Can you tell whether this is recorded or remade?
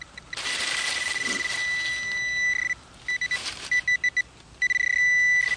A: recorded